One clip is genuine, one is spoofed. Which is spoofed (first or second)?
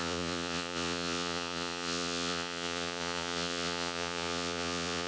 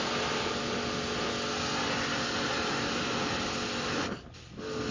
first